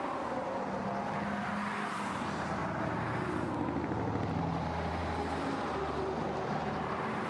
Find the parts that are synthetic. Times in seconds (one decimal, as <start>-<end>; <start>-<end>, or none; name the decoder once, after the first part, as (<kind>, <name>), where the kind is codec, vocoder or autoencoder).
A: none